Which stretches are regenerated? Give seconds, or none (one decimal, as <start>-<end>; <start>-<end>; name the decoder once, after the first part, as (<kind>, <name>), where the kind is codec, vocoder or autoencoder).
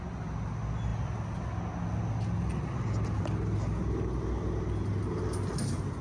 none